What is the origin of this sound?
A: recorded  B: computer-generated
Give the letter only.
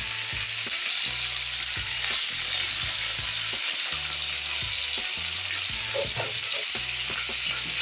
A